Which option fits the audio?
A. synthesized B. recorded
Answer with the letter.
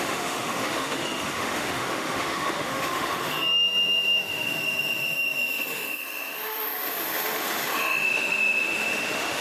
A